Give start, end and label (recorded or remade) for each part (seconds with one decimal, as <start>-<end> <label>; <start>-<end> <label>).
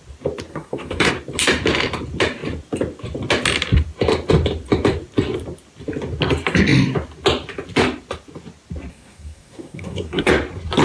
0.0-0.5 recorded; 0.5-1.1 remade; 1.1-8.9 recorded; 8.9-10.3 remade; 10.3-10.8 recorded